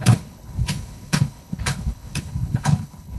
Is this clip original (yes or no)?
no